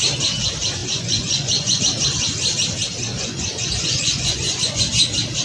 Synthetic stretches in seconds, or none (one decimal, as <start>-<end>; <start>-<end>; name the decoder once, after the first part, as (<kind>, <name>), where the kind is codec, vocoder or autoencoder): 0.8-1.8 (vocoder, Vocos); 3.1-4.8